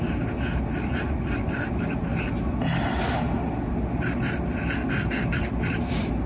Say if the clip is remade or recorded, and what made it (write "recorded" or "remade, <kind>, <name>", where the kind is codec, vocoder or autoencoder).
recorded